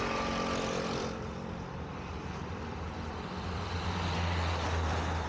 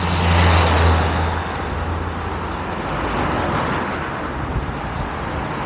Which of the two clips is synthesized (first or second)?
first